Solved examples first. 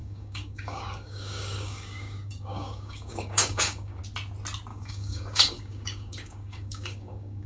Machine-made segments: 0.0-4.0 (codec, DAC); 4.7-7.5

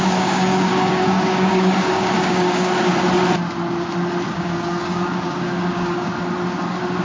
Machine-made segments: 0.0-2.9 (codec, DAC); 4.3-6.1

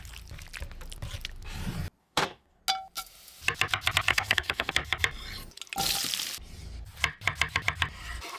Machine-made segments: 2.0-2.6 (codec, DAC); 4.1-4.7

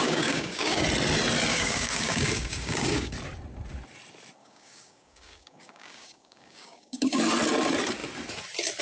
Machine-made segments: 0.0-0.8 (codec, DAC); 1.5-3.1; 4.4-7.2

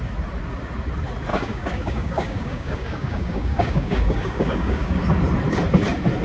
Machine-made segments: 1.3-5.0 (codec, DAC)

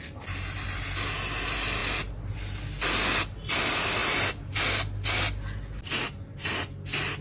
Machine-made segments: none

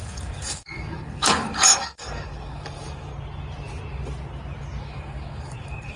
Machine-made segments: 0.0-3.1 (codec, DAC); 4.8-6.0